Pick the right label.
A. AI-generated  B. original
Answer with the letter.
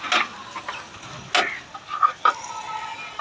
B